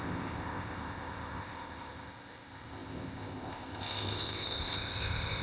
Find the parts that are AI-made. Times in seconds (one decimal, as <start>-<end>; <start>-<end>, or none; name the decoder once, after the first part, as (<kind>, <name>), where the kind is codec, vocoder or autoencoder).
0.0-5.4 (codec, ZipCodec)

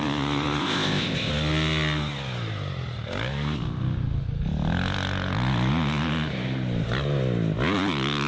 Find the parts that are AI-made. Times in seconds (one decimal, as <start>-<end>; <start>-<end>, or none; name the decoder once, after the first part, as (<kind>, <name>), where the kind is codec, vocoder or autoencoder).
0.6-1.3 (codec, ZipCodec)

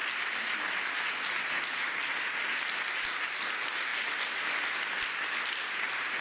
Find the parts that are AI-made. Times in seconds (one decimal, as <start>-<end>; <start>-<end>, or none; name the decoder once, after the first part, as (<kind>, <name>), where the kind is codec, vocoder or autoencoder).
none